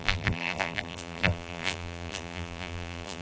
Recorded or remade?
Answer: remade